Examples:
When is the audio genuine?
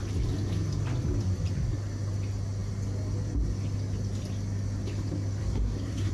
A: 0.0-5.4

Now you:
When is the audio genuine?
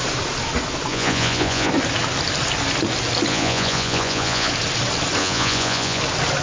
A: 0.0-0.9; 1.7-3.3; 4.5-5.2; 6.0-6.4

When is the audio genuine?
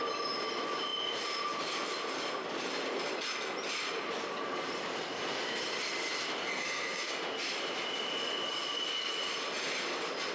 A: 0.0-6.5; 7.1-10.3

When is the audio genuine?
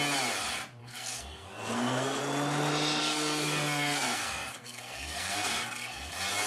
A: 0.0-0.8; 2.2-3.0; 6.1-6.5